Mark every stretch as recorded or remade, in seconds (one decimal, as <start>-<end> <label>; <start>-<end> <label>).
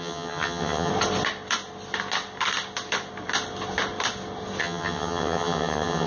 0.0-0.9 remade; 0.9-4.6 recorded; 4.6-6.1 remade